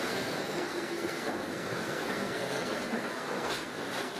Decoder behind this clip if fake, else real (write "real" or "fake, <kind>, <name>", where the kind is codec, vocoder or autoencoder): fake, codec, SNAC